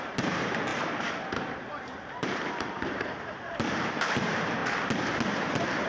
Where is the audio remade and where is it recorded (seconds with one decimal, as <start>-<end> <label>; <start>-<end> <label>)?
0.0-4.6 remade; 4.6-5.5 recorded; 5.5-5.9 remade

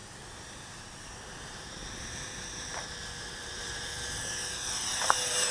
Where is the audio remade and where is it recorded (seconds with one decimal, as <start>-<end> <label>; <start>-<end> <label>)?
0.0-2.7 recorded; 2.7-5.5 remade

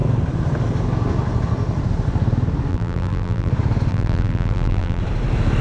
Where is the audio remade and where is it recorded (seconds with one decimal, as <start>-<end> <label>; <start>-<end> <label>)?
0.0-2.7 recorded; 2.7-3.5 remade; 3.5-3.9 recorded; 3.9-5.0 remade; 5.0-5.6 recorded

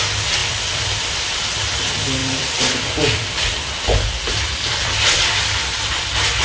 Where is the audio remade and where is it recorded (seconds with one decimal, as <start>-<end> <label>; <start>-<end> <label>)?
0.0-0.4 recorded; 0.4-1.8 remade; 1.8-2.2 recorded; 2.2-6.0 remade; 6.0-6.4 recorded

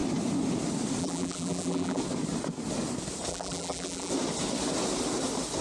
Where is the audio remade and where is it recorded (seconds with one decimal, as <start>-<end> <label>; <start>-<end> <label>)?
0.0-1.0 recorded; 1.0-2.0 remade; 2.0-3.3 recorded; 3.3-4.1 remade; 4.1-5.6 recorded

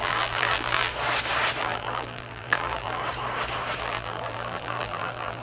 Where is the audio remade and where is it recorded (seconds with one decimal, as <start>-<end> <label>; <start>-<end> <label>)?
0.0-0.9 remade; 0.9-1.6 recorded; 1.6-3.0 remade; 3.0-3.8 recorded; 3.8-5.4 remade

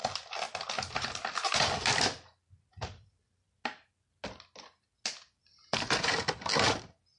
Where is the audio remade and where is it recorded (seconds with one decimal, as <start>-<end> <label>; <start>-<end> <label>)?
0.0-7.2 recorded

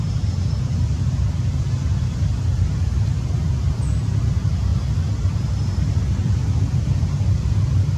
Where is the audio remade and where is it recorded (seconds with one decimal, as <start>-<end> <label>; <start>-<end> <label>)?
0.0-4.7 remade; 4.7-5.2 recorded; 5.2-8.0 remade